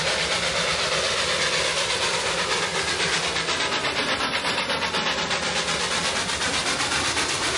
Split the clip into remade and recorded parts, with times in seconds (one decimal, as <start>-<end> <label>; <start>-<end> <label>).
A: 0.0-7.6 recorded